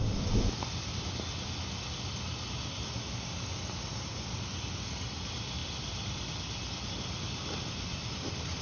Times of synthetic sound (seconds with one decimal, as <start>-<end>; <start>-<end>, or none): 5.6-8.6